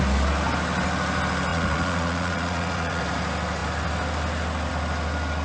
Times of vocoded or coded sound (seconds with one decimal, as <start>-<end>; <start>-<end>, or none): 1.5-3.0